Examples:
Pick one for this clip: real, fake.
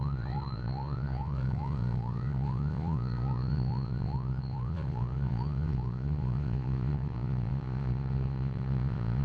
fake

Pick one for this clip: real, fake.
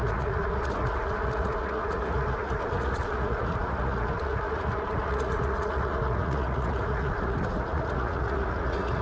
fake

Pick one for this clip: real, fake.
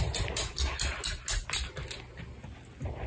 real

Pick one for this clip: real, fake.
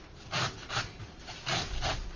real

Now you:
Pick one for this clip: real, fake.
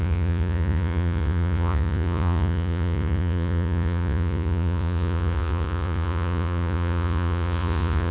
fake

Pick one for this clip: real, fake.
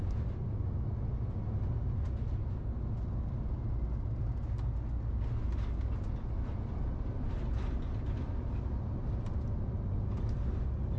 real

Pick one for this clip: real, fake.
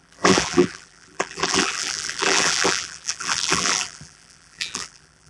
fake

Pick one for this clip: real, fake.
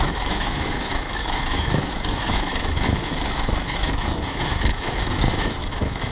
fake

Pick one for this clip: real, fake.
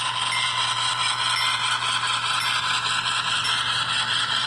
real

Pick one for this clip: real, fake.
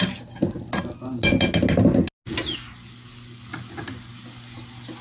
real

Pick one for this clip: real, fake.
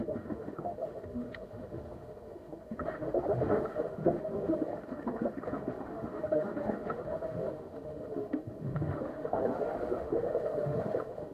fake